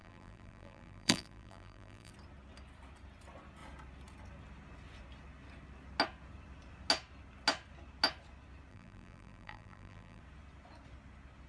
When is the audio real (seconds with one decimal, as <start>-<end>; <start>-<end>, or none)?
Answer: 2.1-8.7; 10.2-11.5